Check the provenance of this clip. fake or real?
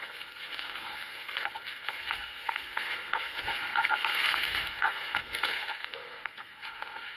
fake